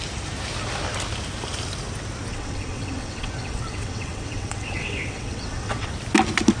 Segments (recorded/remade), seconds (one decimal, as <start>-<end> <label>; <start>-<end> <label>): 0.0-2.3 recorded; 2.3-5.9 remade; 5.9-6.6 recorded